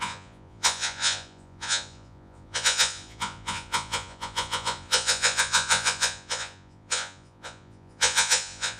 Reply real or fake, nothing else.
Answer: fake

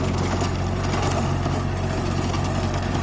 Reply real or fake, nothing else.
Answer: real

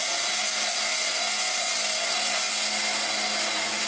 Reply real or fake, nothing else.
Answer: real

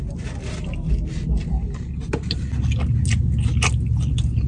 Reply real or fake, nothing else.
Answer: real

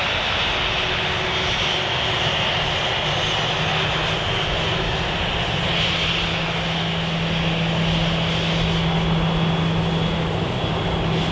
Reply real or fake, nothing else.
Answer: real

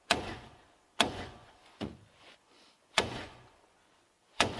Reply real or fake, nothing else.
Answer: fake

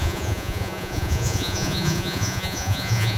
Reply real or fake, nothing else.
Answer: fake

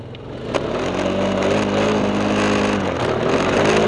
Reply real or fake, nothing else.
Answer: real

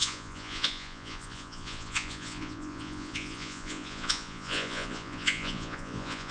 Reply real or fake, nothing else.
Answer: fake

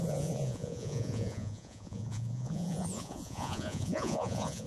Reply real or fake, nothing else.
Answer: fake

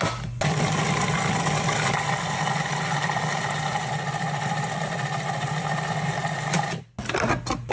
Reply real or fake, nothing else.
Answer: real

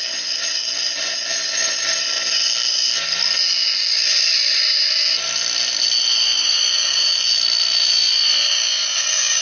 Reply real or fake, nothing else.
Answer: real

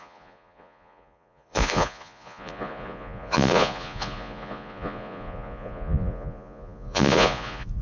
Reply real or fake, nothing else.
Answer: fake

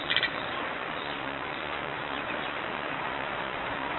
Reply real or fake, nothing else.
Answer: fake